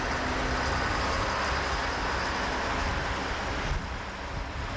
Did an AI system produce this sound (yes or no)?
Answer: no